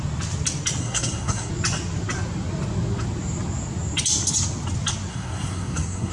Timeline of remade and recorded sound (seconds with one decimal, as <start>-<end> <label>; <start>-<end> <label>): 0.0-0.8 recorded; 0.8-1.5 remade; 1.5-5.1 recorded; 5.1-6.1 remade